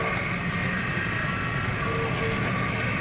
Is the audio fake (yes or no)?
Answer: no